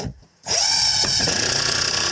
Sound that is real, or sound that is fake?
fake